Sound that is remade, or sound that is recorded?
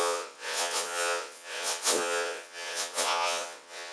remade